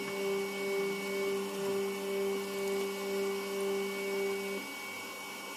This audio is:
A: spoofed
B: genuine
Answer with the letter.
B